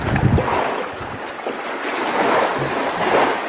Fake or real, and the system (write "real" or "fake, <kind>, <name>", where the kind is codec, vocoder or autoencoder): real